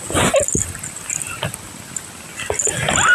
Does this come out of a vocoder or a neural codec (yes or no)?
no